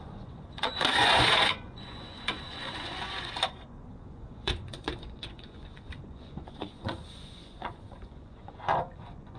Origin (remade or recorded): remade